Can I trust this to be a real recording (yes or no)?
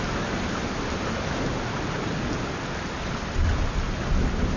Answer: yes